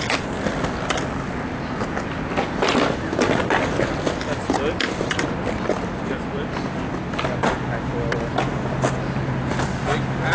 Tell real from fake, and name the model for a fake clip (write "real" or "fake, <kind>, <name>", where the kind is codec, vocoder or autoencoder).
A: real